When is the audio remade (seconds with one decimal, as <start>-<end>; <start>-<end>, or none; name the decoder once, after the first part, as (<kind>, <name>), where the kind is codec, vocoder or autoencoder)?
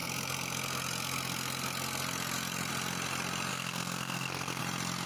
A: 3.5-4.6 (codec, SNAC)